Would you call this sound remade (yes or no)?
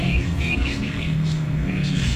yes